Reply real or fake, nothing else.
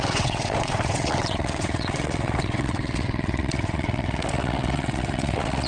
fake